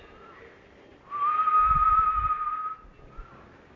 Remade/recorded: recorded